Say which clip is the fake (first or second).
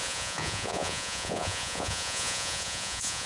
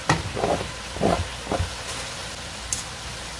first